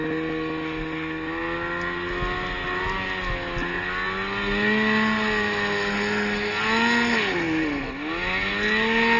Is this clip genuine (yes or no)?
yes